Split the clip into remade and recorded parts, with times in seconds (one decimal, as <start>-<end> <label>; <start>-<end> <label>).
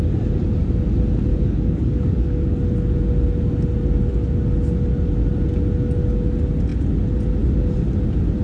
0.0-1.3 recorded; 1.3-2.6 remade; 2.6-8.4 recorded